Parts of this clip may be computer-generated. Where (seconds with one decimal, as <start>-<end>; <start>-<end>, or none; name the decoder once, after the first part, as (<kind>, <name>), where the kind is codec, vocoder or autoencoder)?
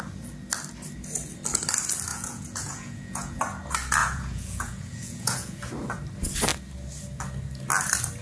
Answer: 2.1-3.4 (vocoder, Vocos); 4.0-5.6